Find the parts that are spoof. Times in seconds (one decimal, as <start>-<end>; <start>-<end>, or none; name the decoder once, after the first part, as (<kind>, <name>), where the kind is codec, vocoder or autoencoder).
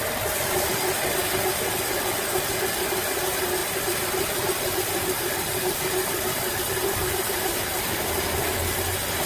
3.6-8.7 (vocoder, BigVGAN v2)